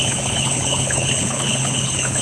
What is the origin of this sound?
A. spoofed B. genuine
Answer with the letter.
A